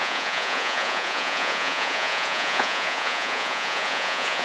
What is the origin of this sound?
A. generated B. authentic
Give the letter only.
A